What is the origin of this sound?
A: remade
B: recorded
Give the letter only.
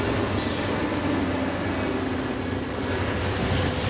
B